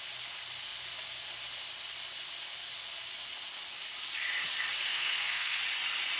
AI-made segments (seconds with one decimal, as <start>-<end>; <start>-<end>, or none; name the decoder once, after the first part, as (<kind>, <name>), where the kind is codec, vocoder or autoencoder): 4.9-5.6 (codec, SNAC)